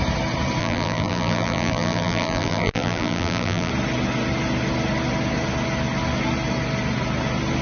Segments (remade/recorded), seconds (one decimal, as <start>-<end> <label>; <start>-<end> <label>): 0.0-0.6 recorded; 0.6-3.7 remade; 3.7-7.6 recorded